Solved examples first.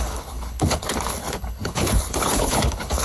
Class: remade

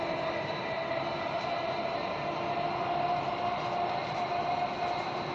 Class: recorded